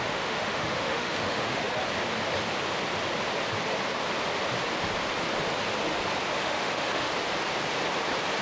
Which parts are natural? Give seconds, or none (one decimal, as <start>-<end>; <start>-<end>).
1.6-6.4; 7.1-8.4